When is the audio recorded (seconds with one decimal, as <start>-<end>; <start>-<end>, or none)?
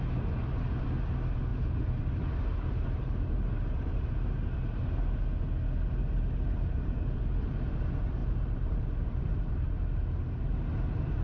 0.0-1.5; 4.1-6.0; 7.2-8.2; 9.5-11.2